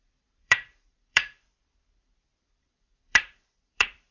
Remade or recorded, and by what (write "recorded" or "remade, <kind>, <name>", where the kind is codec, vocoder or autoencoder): remade, vocoder, BigVGAN v2